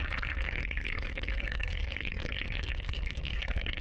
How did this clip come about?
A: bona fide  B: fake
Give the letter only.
B